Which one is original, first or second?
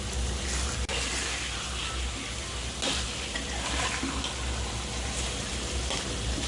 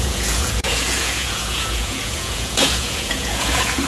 first